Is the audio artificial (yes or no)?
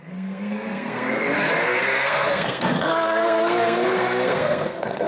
yes